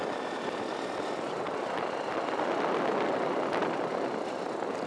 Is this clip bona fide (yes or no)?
yes